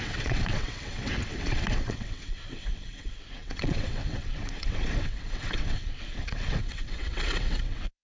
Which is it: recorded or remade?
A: remade